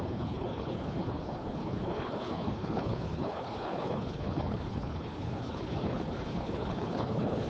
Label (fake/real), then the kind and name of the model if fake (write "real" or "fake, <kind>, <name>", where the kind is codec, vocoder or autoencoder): fake, codec, HILCodec